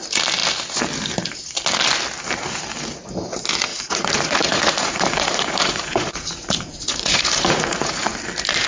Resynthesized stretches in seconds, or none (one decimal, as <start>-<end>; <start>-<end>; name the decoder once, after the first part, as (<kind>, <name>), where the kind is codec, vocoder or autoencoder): 3.7-8.1 (vocoder, Vocos)